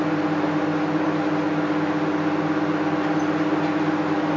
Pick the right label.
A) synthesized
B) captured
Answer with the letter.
B